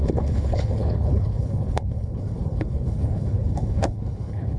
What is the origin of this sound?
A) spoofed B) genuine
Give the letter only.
A